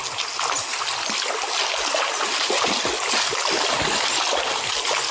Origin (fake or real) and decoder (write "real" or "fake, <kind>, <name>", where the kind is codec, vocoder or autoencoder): real